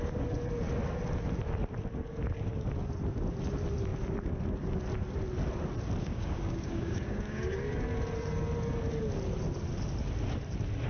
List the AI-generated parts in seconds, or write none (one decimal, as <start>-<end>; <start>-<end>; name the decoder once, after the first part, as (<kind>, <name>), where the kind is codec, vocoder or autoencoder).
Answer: 6.0-7.7 (codec, DAC)